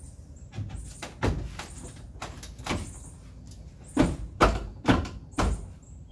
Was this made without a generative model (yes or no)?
yes